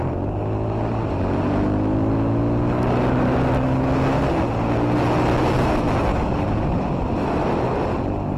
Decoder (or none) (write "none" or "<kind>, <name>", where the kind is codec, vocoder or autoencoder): none